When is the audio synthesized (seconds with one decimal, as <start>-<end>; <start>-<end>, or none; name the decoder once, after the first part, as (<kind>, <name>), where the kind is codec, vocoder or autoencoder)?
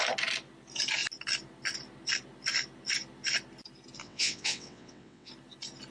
4.0-5.3 (vocoder, WaveNeXt)